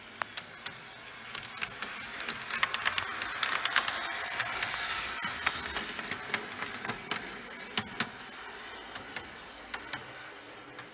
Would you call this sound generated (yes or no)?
no